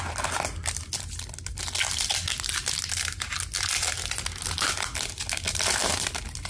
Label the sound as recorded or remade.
recorded